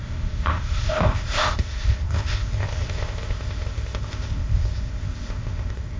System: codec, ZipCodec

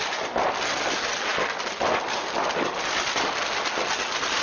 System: none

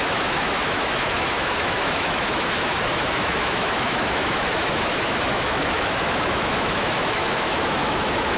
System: autoencoder, DAC-VAE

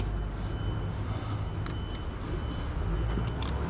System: none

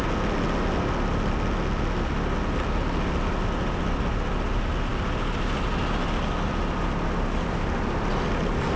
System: none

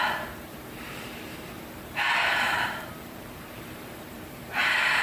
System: vocoder, BigVGAN v2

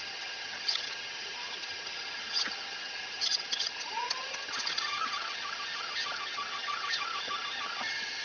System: vocoder, HiFi-GAN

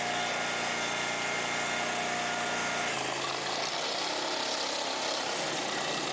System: none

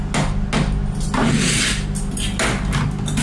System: none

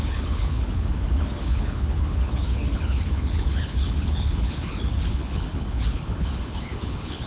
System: codec, HILCodec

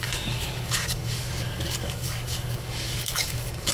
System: codec, DAC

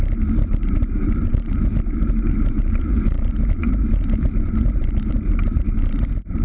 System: vocoder, BigVGAN v2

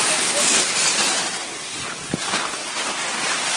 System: none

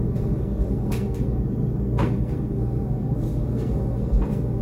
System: codec, SNAC